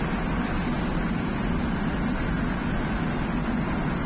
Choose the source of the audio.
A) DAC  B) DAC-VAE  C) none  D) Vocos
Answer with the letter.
C